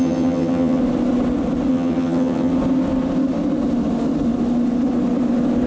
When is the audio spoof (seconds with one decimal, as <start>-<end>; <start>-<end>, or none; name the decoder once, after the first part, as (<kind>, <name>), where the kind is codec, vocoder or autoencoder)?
0.0-0.8 (vocoder, HiFi-GAN); 1.7-2.5